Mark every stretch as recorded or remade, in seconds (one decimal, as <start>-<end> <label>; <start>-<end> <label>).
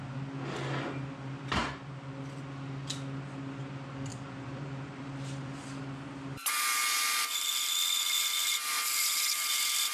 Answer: 0.0-4.1 recorded; 4.1-5.8 remade; 5.8-8.4 recorded; 8.4-9.9 remade